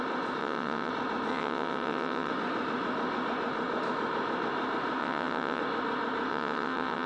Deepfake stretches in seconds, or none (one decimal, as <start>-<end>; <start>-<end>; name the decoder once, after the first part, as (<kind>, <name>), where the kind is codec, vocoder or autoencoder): 0.4-0.9 (vocoder, WaveNeXt); 1.3-2.3; 5.0-5.6; 6.3-7.1

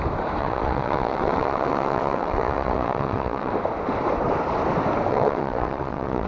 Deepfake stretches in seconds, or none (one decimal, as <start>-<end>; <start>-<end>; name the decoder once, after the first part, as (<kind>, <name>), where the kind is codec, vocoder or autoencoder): 0.4-3.5 (vocoder, WaveNeXt); 5.1-6.3

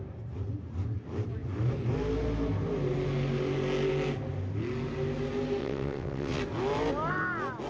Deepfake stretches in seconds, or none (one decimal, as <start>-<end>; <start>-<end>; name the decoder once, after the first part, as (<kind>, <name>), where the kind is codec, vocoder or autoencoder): 5.6-6.4 (vocoder, WaveNeXt)